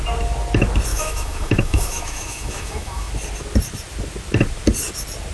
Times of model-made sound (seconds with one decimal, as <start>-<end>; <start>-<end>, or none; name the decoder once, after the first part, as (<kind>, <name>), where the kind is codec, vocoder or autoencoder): 0.9-3.1 (autoencoder, DAC-VAE)